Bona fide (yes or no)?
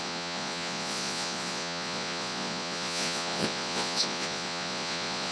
no